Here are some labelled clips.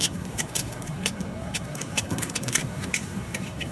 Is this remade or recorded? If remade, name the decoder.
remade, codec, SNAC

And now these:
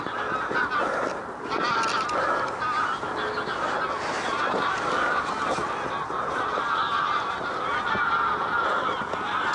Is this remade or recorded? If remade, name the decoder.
recorded